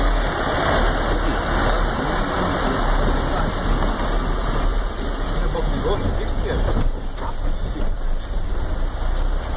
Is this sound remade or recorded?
recorded